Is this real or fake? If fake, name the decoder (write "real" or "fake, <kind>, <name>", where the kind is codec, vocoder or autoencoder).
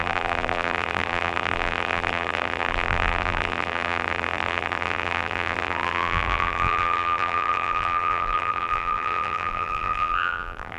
fake, vocoder, BigVGAN v2